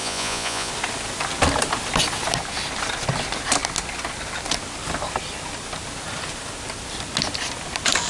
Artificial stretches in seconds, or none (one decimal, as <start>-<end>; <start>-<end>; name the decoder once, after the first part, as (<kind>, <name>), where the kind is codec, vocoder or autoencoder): 0.0-0.7 (vocoder, Vocos)